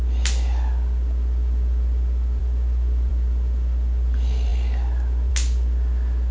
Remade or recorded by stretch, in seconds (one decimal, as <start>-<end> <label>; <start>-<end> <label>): 0.0-6.3 recorded